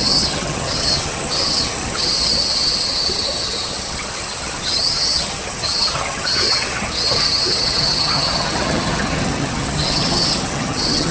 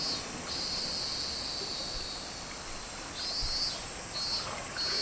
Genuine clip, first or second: second